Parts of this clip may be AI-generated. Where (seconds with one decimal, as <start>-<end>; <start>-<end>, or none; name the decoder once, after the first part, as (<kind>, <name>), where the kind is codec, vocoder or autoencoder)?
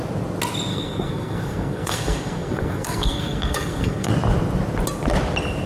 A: 0.7-4.1 (codec, SNAC)